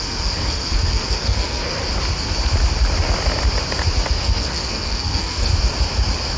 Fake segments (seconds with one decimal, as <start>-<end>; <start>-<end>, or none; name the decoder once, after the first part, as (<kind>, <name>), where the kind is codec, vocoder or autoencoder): 0.0-1.8 (codec, SNAC); 4.1-5.5